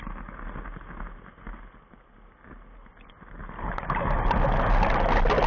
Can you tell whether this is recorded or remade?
recorded